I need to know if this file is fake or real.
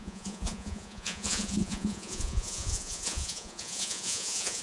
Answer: fake